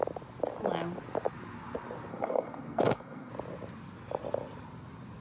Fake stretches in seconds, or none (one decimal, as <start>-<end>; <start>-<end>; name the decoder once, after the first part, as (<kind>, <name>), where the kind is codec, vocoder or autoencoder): 2.1-3.3 (codec, SNAC)